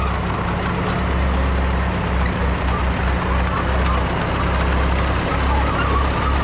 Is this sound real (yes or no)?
yes